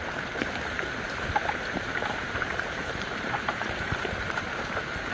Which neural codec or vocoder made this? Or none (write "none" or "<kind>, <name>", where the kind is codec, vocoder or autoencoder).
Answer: vocoder, BigVGAN v2